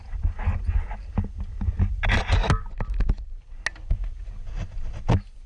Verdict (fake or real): real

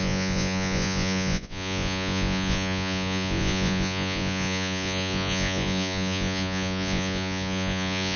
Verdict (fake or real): fake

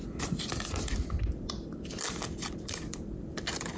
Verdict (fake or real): fake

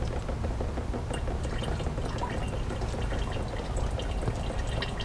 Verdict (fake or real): real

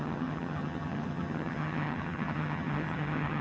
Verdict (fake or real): fake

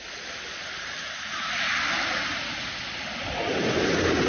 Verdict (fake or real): real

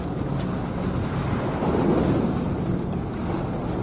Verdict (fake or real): real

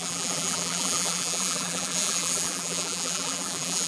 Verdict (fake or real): fake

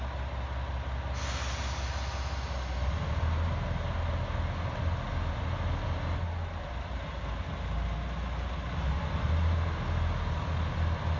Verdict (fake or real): real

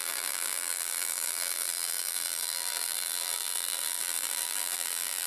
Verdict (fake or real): fake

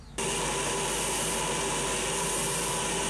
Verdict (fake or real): real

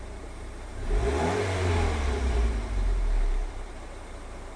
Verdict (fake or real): fake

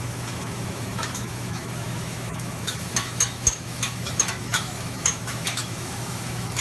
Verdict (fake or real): fake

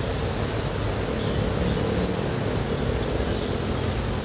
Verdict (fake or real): real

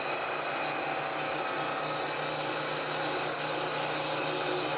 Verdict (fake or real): real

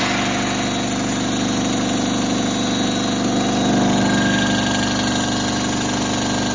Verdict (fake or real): real